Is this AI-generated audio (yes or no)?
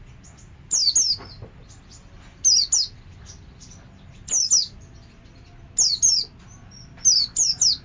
no